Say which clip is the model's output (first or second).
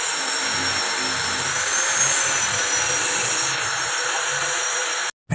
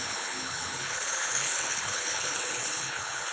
second